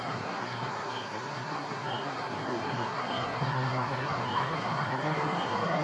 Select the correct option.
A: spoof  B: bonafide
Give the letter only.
A